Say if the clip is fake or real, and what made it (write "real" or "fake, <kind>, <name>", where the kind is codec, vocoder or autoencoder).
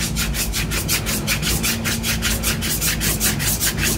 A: real